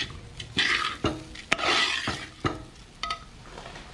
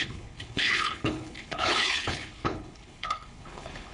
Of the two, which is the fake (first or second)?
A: second